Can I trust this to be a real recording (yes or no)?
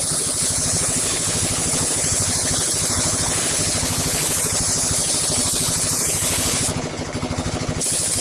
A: no